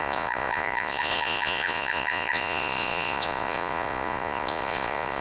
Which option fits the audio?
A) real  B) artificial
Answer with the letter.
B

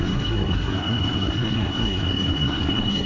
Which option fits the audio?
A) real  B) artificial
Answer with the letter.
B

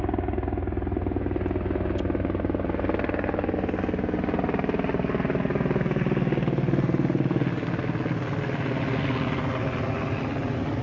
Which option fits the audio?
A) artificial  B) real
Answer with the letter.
B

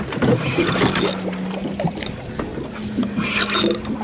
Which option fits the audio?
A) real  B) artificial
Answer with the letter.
A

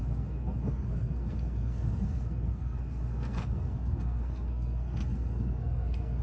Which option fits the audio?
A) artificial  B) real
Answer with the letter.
A